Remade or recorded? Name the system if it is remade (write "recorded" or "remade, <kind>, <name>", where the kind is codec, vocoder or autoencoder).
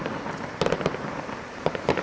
remade, vocoder, BigVGAN v2